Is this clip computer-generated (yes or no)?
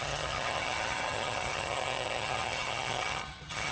yes